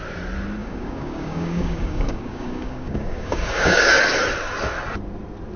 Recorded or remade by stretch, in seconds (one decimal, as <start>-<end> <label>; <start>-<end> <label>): 0.0-0.6 recorded; 0.6-4.0 remade; 4.0-5.6 recorded